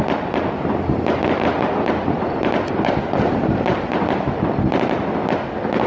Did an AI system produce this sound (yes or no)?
no